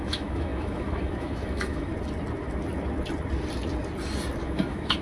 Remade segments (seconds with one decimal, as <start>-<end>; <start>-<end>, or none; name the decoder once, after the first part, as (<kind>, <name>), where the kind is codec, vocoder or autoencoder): 0.0-1.9 (autoencoder, DAC-VAE); 4.4-5.0